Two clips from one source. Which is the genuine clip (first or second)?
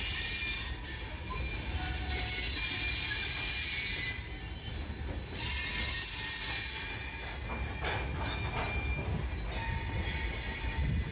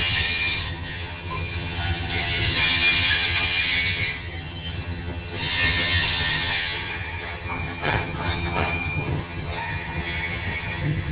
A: first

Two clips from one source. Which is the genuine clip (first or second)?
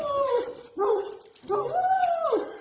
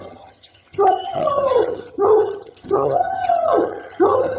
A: first